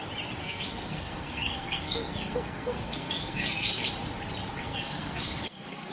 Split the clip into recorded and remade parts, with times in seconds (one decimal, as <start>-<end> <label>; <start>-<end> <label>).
0.0-0.4 recorded; 0.4-3.9 remade; 3.9-4.6 recorded; 4.6-5.9 remade